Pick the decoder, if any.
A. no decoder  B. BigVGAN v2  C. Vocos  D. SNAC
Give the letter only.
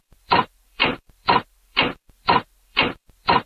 B